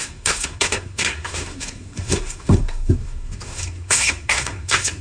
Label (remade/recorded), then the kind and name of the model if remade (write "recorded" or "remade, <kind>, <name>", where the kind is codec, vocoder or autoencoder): remade, codec, SNAC